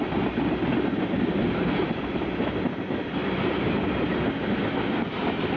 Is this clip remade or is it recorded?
recorded